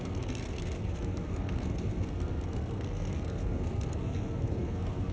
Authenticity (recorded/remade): remade